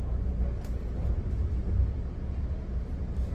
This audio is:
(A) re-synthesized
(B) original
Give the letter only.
B